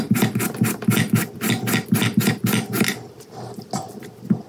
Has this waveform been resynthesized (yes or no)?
no